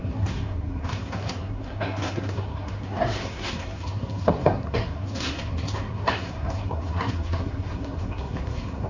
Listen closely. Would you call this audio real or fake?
fake